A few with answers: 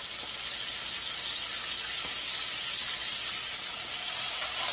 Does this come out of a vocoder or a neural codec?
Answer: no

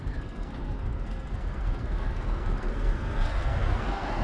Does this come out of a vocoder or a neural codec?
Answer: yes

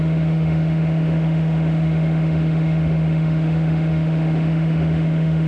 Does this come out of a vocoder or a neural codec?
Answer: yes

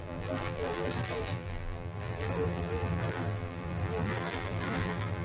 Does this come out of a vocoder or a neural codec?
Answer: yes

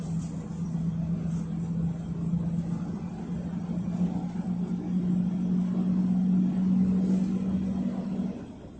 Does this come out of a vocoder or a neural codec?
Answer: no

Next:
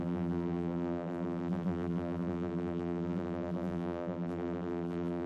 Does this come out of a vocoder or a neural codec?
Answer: yes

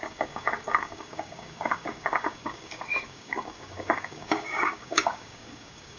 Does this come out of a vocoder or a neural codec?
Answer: yes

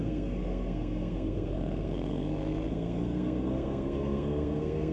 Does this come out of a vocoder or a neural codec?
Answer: yes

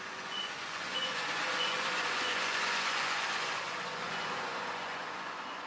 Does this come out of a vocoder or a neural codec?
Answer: yes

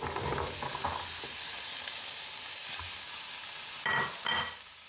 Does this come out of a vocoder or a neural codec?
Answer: no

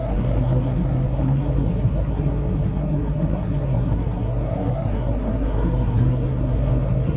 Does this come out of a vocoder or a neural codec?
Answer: yes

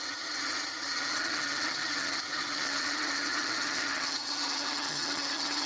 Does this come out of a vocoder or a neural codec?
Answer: yes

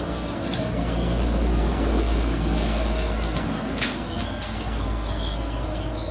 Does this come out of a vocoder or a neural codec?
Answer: yes